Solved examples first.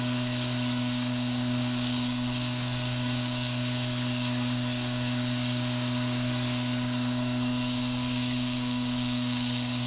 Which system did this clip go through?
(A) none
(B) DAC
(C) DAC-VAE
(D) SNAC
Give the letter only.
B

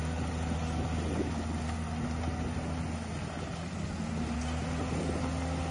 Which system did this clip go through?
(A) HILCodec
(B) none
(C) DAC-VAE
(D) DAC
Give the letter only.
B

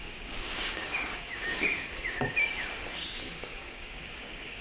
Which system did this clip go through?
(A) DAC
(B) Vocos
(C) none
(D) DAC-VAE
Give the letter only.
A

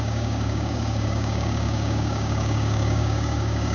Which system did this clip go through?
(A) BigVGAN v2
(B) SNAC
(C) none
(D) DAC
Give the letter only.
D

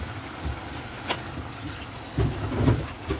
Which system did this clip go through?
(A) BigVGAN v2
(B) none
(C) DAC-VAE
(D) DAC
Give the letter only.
B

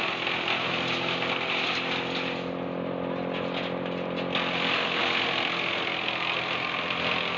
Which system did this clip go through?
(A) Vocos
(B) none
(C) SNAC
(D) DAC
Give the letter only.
B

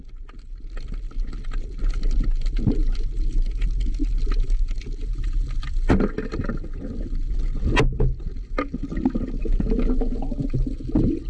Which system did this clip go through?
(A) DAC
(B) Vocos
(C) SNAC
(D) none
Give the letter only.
D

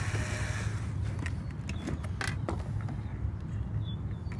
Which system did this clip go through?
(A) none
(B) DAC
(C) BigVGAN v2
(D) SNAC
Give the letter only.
A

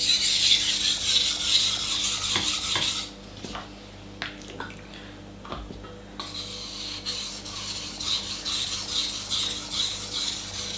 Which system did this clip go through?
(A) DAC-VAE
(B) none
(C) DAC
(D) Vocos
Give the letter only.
B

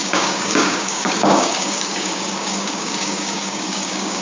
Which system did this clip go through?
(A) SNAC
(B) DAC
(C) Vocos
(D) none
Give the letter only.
B